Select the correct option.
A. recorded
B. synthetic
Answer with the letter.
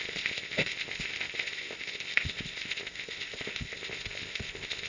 B